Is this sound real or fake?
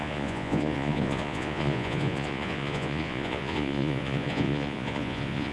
fake